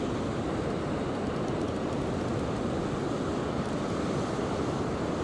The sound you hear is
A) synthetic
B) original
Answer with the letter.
A